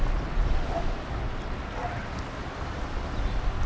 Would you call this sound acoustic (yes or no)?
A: yes